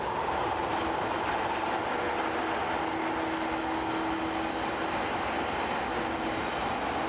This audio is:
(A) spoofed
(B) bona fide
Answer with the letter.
B